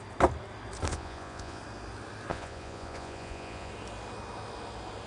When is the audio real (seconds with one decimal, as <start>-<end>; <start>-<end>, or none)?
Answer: 0.0-0.9; 1.6-2.3; 3.7-5.1